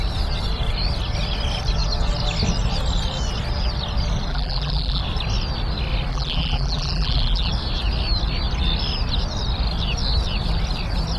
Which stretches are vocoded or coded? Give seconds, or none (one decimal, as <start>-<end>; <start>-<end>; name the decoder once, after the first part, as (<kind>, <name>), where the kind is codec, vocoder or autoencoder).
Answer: 4.3-5.0 (vocoder, BigVGAN v2); 6.1-7.5